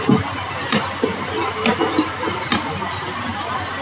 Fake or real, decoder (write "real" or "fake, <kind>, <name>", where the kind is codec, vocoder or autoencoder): real